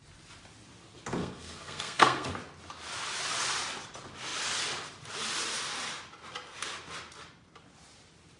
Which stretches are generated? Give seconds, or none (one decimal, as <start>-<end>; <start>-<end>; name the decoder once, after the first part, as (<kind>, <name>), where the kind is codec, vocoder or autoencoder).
1.2-2.3 (codec, SNAC)